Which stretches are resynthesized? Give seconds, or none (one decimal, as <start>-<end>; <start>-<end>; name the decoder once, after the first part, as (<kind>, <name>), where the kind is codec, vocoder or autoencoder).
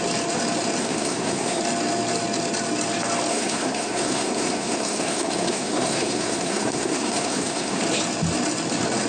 0.8-1.6 (codec, SNAC); 3.3-7.8